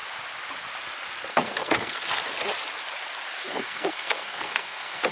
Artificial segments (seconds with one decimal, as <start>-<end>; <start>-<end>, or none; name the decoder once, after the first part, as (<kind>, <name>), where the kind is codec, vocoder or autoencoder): 1.3-2.2 (codec, SNAC); 3.5-5.1